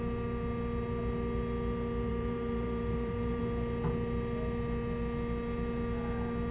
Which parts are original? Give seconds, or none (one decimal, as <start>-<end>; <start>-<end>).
0.0-2.1; 3.4-6.5